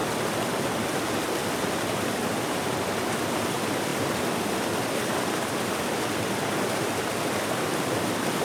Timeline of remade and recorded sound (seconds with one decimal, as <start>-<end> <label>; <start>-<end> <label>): 0.0-2.2 recorded; 2.2-8.4 remade